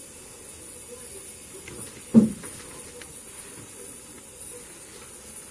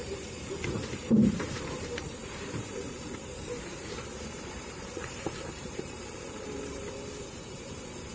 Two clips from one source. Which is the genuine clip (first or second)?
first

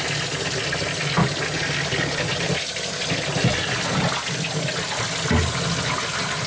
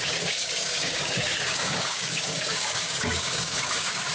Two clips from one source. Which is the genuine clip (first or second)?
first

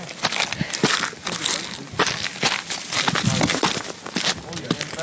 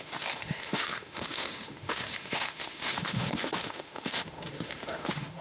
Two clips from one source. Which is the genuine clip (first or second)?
first